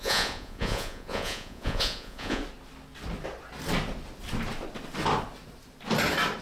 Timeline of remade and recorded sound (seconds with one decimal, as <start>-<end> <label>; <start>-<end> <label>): 0.0-2.4 remade; 2.4-6.4 recorded